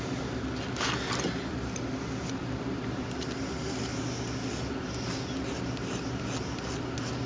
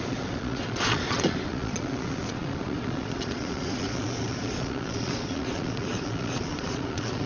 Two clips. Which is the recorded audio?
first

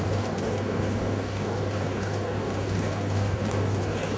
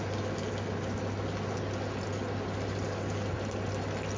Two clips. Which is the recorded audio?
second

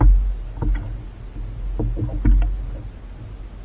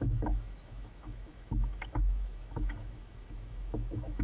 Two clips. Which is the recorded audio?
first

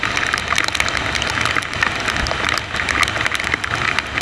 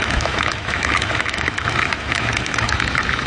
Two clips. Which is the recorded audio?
first